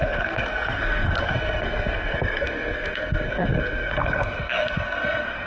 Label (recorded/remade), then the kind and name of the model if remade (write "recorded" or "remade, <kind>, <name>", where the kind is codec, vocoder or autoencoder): remade, codec, SNAC